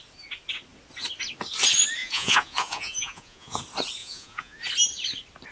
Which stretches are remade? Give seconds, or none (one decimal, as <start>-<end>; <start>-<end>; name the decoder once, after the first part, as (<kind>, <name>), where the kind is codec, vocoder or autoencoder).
2.0-3.6 (vocoder, Vocos); 4.0-4.6